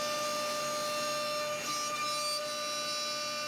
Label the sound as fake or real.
real